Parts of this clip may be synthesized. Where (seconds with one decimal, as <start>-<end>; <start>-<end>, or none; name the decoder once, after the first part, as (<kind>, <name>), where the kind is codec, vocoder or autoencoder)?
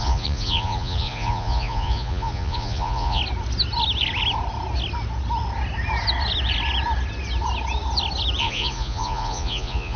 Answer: 0.0-3.2 (vocoder, Vocos); 8.4-10.0